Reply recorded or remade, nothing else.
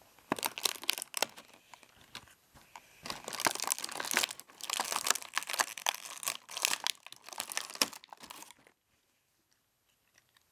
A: recorded